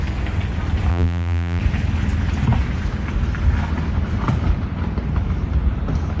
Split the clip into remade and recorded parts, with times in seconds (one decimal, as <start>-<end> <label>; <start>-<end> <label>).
0.0-0.9 recorded; 0.9-1.6 remade; 1.6-6.2 recorded